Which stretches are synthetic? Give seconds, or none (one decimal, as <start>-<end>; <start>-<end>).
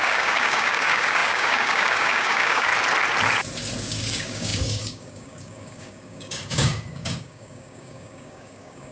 0.0-2.7; 3.8-8.9